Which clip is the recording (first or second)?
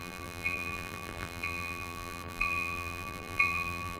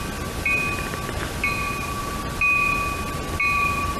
second